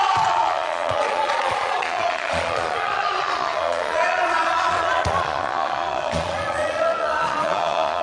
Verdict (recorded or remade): remade